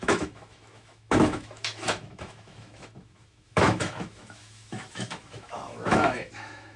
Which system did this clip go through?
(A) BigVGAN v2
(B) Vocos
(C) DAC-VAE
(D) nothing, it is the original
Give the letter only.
C